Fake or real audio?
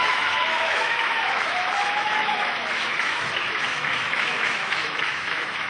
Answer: fake